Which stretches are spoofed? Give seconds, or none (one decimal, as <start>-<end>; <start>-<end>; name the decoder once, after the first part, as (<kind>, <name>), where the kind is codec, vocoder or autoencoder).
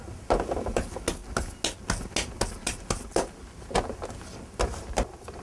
none